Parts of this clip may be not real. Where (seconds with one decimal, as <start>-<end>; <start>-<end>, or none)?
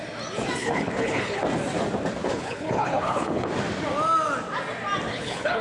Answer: 0.6-1.4; 2.2-3.5; 5.1-5.6